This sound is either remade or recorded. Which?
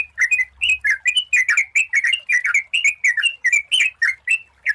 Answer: recorded